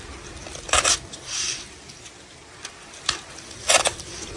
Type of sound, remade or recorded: remade